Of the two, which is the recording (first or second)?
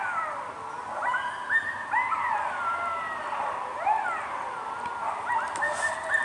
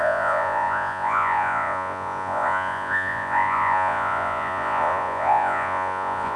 first